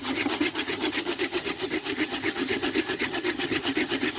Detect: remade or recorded remade